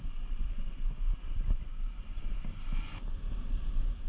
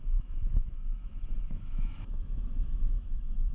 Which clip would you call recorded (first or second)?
first